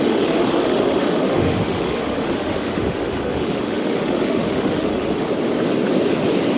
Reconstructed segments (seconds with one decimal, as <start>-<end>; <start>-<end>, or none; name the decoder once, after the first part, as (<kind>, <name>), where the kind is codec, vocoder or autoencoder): 0.0-5.3 (autoencoder, DAC-VAE)